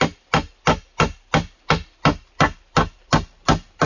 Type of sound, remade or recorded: recorded